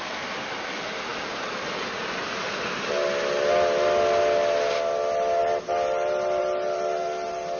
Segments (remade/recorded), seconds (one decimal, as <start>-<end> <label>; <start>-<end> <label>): 0.0-7.6 recorded